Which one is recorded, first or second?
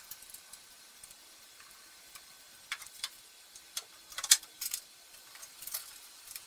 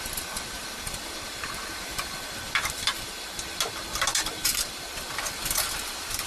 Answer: second